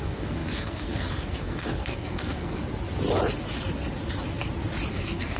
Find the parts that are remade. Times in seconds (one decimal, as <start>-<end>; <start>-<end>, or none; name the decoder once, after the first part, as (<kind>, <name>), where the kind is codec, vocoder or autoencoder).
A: 0.0-2.6 (codec, SNAC); 4.9-5.4